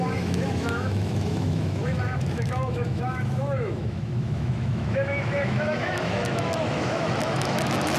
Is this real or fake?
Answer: fake